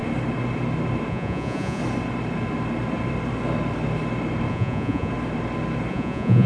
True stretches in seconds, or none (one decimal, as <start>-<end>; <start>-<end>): 0.0-1.1; 1.8-4.5; 5.1-5.9